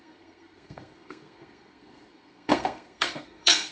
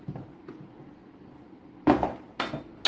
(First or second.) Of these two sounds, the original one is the second